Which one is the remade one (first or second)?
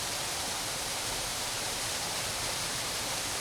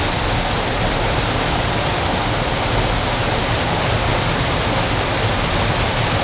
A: first